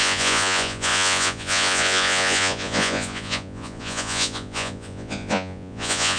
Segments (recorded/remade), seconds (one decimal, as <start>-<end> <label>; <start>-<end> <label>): 0.0-6.2 remade